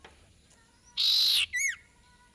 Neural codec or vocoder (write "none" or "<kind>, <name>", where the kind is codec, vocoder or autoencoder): none